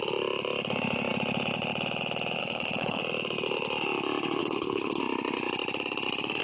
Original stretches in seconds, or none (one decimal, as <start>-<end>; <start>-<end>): 0.0-2.4; 3.0-4.4; 5.0-6.4